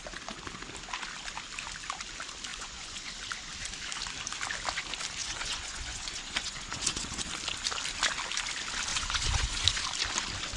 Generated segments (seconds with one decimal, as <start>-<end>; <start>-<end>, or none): 2.5-3.1; 5.2-7.3; 8.9-9.8